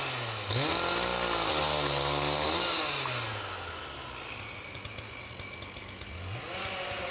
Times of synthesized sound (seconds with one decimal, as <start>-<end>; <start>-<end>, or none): none